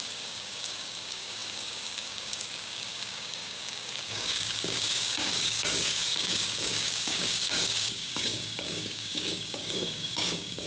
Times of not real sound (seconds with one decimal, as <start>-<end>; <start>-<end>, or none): 0.0-10.7